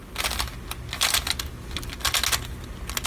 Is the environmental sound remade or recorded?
recorded